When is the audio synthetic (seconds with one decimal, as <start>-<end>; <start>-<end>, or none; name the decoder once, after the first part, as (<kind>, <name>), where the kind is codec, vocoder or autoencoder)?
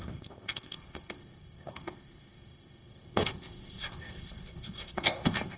0.0-5.6 (codec, ZipCodec)